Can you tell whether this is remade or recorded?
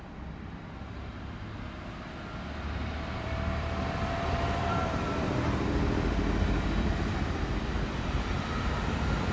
remade